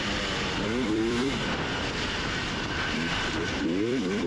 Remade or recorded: remade